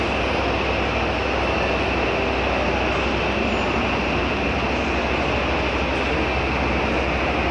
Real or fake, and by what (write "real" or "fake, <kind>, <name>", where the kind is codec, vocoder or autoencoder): real